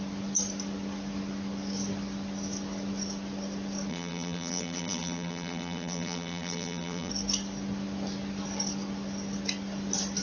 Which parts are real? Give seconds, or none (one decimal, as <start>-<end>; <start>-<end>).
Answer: 0.0-3.9; 7.1-10.2